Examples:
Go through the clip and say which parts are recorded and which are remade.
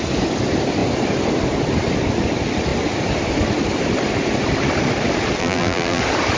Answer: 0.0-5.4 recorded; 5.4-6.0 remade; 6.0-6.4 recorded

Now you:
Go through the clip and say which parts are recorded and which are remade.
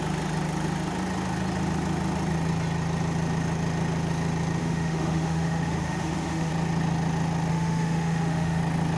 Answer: 0.0-4.6 recorded; 4.6-6.5 remade; 6.5-7.5 recorded; 7.5-8.6 remade; 8.6-9.0 recorded